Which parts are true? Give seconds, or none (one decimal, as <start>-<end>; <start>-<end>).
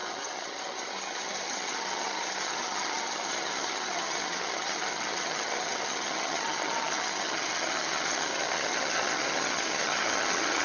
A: none